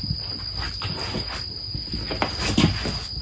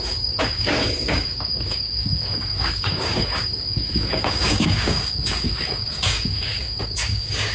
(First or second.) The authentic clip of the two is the first